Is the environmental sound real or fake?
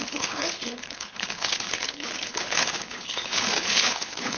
fake